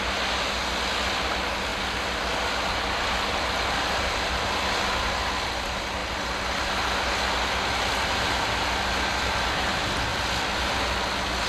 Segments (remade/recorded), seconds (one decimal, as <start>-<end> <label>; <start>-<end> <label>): 0.0-11.5 recorded